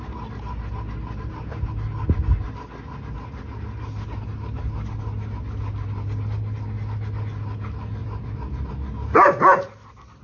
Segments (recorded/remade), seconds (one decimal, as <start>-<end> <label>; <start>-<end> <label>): 0.0-8.0 recorded; 8.0-8.7 remade; 8.7-10.2 recorded